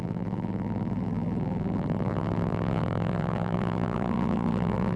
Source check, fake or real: fake